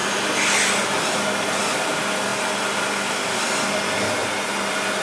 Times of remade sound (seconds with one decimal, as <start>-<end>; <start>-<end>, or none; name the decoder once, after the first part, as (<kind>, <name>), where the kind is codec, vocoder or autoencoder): none